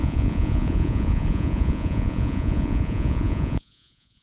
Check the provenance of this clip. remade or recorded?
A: remade